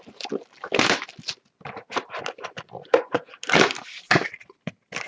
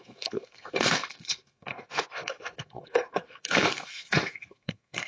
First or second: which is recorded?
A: first